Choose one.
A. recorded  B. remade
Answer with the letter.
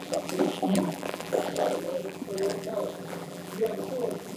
B